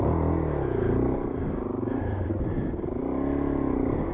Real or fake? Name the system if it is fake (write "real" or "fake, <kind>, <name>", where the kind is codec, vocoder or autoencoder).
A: real